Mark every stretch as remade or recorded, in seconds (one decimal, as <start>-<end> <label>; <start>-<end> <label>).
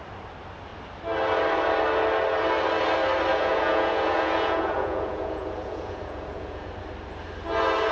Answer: 0.0-3.3 recorded; 3.3-6.7 remade; 6.7-7.9 recorded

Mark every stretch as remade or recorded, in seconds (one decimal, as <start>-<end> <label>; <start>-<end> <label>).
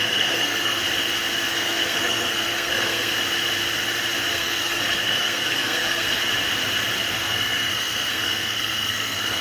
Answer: 0.0-0.8 remade; 0.8-1.5 recorded; 1.5-3.1 remade; 3.1-4.3 recorded; 4.3-6.2 remade; 6.2-7.1 recorded; 7.1-9.4 remade